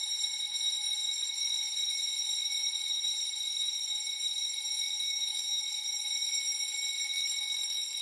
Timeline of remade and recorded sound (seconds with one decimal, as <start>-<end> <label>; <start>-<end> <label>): 0.0-5.0 recorded; 5.0-5.6 remade; 5.6-8.0 recorded